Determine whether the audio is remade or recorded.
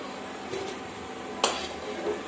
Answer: recorded